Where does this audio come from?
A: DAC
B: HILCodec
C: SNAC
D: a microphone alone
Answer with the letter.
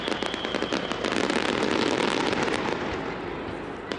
D